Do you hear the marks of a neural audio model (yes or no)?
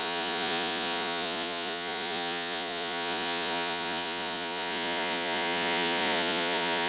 yes